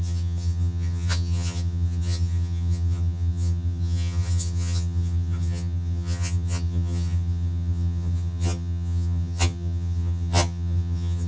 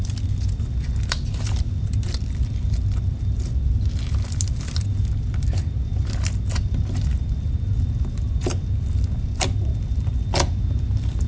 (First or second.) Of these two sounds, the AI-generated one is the first